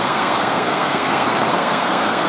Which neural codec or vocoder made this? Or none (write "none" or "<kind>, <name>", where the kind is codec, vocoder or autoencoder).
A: codec, SNAC